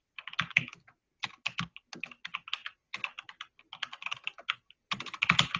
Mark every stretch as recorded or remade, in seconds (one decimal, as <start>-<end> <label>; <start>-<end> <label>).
0.0-5.6 recorded